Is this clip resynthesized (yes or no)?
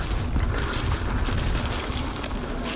no